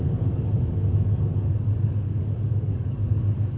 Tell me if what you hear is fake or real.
fake